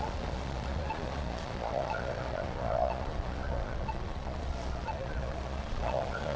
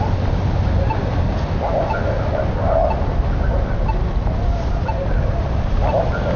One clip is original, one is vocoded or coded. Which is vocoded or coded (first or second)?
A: first